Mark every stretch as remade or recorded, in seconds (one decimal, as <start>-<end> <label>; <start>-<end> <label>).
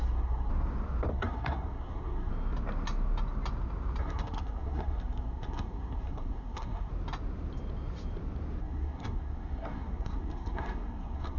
0.0-0.5 remade; 0.5-1.1 recorded; 1.1-2.3 remade; 2.3-4.0 recorded; 4.0-6.9 remade; 6.9-8.6 recorded; 8.6-11.4 remade